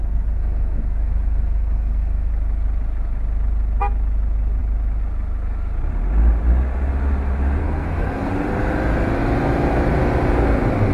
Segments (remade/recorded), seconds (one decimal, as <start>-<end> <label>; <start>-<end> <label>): 0.0-2.3 remade; 2.3-7.6 recorded; 7.6-8.3 remade; 8.3-10.9 recorded